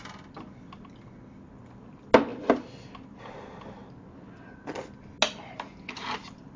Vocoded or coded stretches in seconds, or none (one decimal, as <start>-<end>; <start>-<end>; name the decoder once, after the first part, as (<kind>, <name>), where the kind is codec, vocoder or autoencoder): none